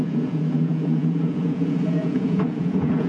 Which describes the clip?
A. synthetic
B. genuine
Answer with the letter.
A